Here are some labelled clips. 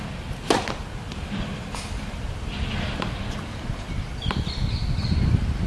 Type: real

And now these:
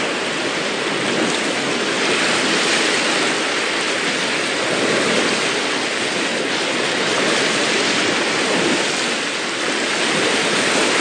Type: real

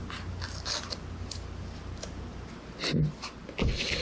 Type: real